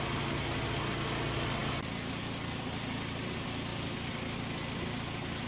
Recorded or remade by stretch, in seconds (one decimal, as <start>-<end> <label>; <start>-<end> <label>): 0.0-5.5 recorded